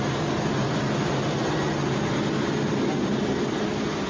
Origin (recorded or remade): recorded